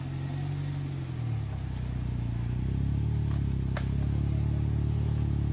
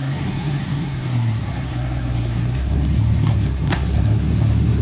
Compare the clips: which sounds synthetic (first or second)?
second